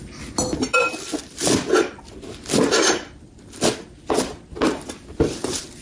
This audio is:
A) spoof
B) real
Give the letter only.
B